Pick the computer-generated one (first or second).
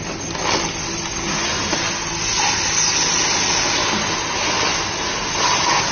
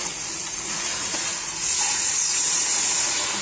second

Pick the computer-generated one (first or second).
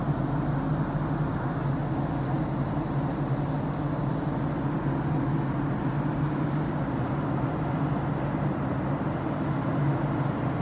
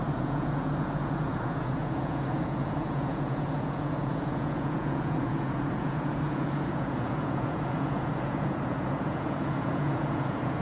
second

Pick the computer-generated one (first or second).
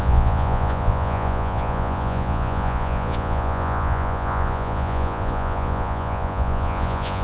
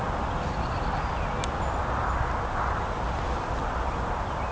first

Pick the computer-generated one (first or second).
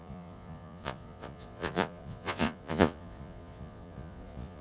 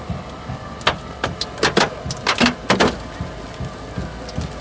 first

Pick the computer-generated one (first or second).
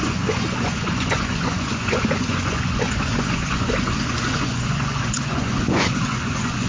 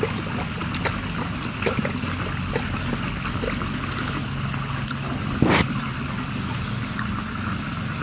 first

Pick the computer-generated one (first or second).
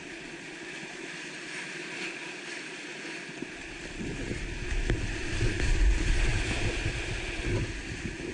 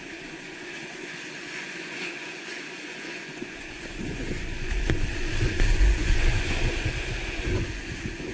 second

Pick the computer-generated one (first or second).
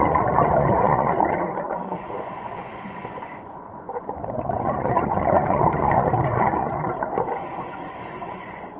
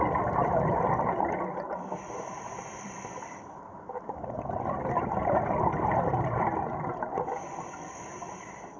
first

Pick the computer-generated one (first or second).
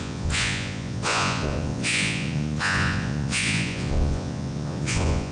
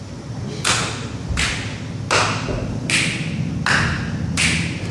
first